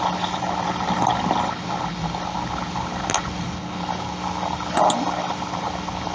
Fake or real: real